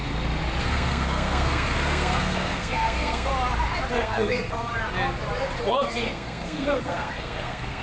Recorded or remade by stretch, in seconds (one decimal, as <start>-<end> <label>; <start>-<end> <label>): 0.0-0.6 recorded; 0.6-3.3 remade; 3.3-3.9 recorded; 3.9-4.7 remade; 4.7-5.6 recorded; 5.6-7.8 remade